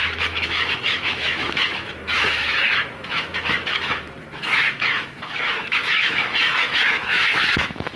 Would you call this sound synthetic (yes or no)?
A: yes